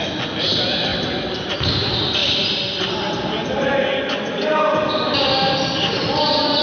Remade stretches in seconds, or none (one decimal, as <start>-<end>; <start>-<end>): none